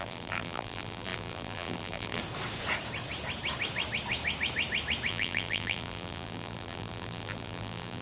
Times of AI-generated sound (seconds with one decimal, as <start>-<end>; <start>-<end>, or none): 0.0-2.2; 5.1-8.0